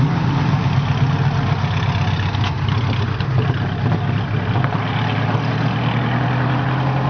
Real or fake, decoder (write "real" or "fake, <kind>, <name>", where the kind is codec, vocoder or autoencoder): real